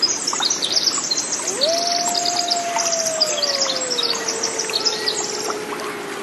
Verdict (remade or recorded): recorded